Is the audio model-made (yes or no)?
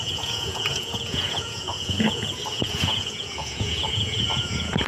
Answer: yes